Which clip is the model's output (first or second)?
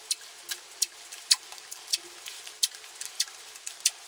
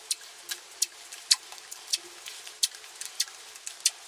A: first